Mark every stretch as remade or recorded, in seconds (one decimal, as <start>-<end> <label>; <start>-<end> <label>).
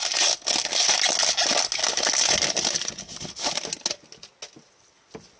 0.0-5.4 recorded